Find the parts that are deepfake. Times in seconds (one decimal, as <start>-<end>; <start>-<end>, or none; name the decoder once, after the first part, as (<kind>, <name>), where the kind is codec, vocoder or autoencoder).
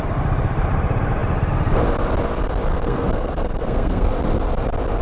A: 2.7-4.1 (codec, SNAC)